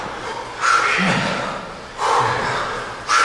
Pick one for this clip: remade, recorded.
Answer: recorded